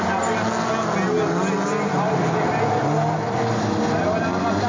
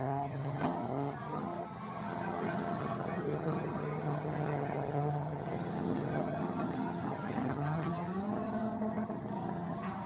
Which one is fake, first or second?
second